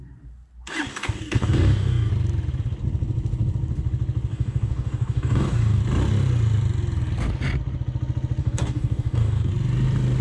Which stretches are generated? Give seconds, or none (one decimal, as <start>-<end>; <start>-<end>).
0.9-2.1; 4.3-5.8; 8.4-9.5